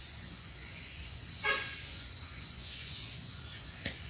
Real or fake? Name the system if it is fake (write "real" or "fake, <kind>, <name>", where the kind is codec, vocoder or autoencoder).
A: fake, vocoder, Vocos